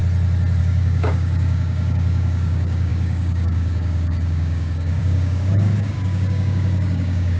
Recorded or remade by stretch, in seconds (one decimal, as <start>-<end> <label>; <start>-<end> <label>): 0.0-0.6 recorded; 0.6-7.4 remade